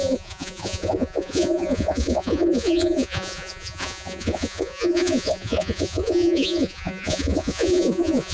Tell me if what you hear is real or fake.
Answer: fake